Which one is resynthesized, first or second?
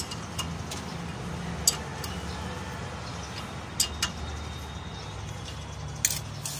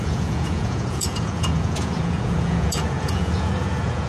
second